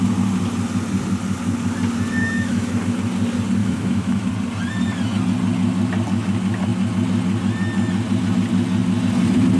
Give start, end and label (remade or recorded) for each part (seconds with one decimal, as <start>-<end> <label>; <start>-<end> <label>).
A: 0.0-2.2 recorded; 2.2-2.8 remade; 2.8-3.6 recorded; 3.6-4.3 remade; 4.3-9.6 recorded